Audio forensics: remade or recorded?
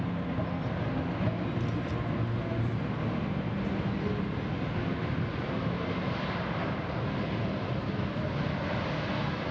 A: recorded